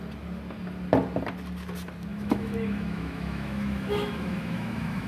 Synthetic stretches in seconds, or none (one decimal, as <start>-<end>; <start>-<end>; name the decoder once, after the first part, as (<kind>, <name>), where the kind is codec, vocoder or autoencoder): 2.1-5.1 (autoencoder, DAC-VAE)